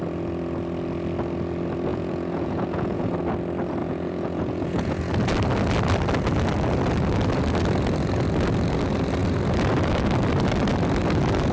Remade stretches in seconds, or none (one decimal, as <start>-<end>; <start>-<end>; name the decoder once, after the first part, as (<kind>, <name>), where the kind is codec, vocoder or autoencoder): 1.9-3.1 (vocoder, Vocos); 3.8-5.1